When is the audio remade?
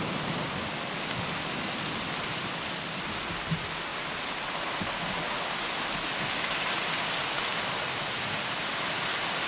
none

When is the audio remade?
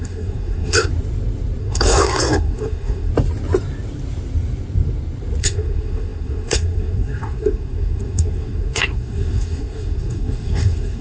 0.0-0.9 (codec, SNAC); 1.6-3.1; 5.4-11.0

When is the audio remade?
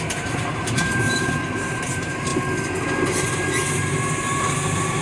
0.0-2.3 (vocoder, BigVGAN v2); 4.4-5.0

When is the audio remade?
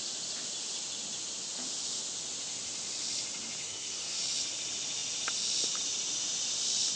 3.6-4.2 (codec, SNAC)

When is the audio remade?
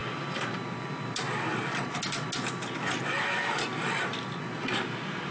none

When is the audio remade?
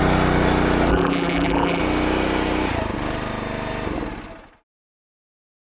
0.9-1.8 (vocoder, BigVGAN v2)